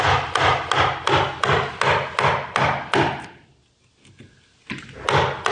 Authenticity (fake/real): real